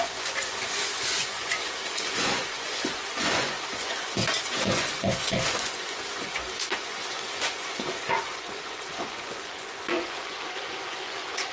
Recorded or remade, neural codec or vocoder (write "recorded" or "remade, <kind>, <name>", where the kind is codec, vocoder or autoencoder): remade, vocoder, Vocos